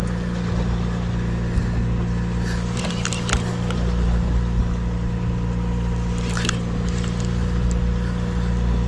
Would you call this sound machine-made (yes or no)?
no